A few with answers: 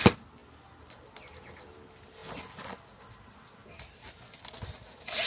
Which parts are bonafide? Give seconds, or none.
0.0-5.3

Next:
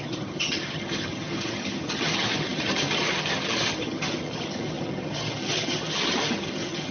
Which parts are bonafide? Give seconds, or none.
none

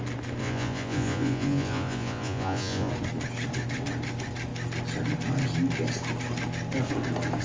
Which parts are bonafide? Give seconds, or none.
0.0-0.4; 2.9-7.4

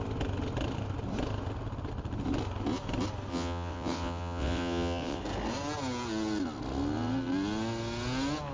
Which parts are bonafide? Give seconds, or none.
0.0-3.3; 5.2-8.5

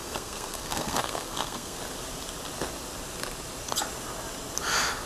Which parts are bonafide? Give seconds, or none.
1.8-5.1